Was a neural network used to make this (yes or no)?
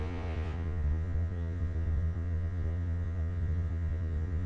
yes